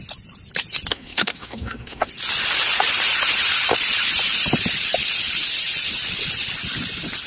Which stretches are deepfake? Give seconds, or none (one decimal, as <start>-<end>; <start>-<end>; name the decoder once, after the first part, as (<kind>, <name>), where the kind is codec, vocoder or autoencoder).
0.9-2.1 (codec, SNAC)